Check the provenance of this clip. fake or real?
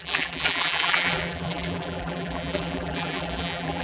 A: fake